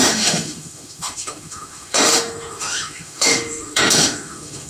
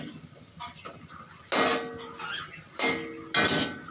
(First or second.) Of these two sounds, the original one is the second